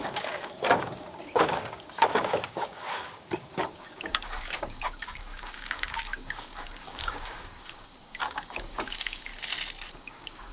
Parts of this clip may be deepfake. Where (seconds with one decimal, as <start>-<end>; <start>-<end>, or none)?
0.0-9.3; 9.9-10.5